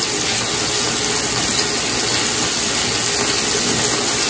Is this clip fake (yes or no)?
no